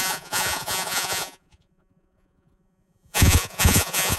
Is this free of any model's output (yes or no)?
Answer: no